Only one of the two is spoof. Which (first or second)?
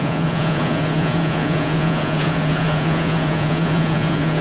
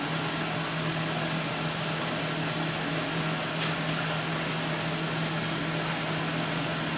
first